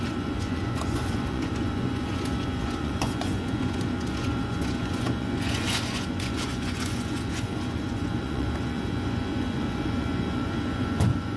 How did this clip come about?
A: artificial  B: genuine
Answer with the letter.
A